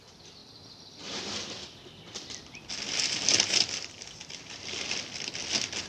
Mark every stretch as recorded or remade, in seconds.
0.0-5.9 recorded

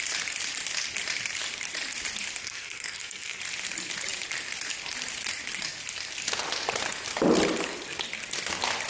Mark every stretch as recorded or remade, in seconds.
0.0-2.4 recorded; 2.4-3.4 remade; 3.4-8.9 recorded

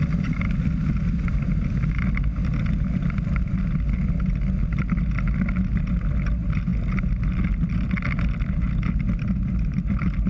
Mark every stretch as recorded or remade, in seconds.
0.0-10.3 recorded

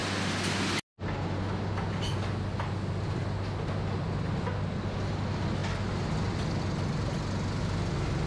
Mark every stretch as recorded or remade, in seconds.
0.0-8.3 recorded

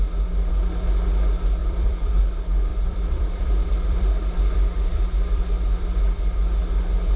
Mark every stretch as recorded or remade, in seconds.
0.0-1.6 recorded; 1.6-2.2 remade; 2.2-2.7 recorded; 2.7-5.5 remade; 5.5-7.2 recorded